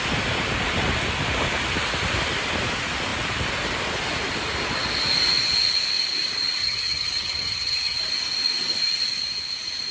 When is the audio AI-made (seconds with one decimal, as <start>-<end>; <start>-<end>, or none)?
6.6-8.0